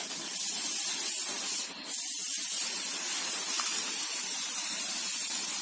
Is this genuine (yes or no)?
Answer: yes